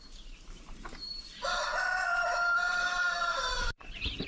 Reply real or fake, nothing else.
fake